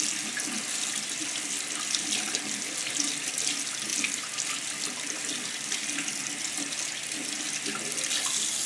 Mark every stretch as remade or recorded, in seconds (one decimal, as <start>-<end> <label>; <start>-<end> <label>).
0.0-1.2 recorded; 1.2-3.3 remade; 3.3-3.9 recorded; 3.9-5.8 remade; 5.8-8.7 recorded